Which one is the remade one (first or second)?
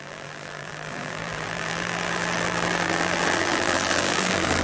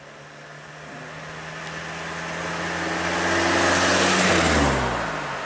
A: first